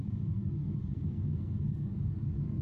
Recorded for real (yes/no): no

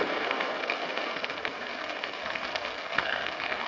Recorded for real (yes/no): no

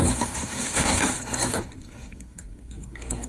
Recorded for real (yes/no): no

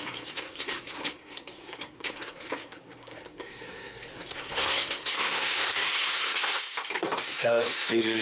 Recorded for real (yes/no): no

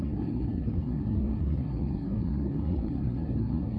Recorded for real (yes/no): no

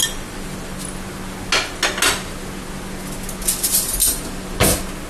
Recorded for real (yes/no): yes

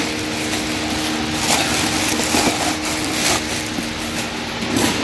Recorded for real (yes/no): yes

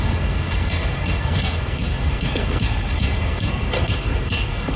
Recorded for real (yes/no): no